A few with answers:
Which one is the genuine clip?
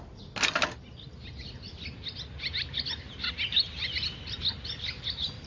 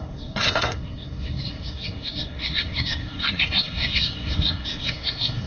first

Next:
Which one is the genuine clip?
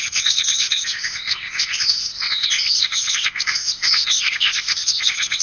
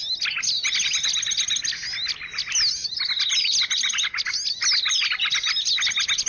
second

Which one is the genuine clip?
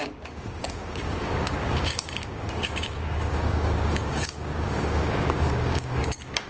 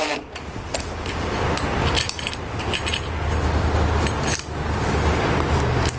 second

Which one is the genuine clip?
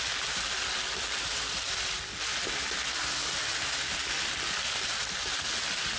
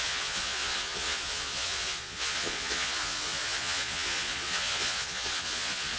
first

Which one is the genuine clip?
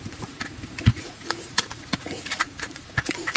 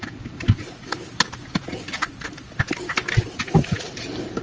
second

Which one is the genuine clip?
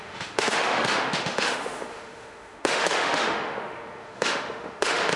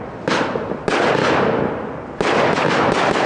second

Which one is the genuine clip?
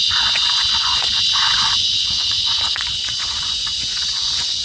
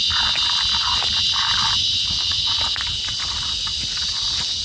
second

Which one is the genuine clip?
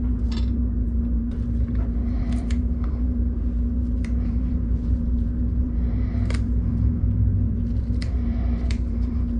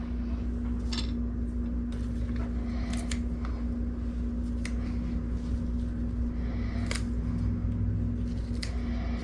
second